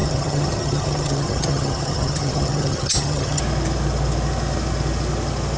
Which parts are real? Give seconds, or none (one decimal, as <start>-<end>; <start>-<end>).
3.4-5.6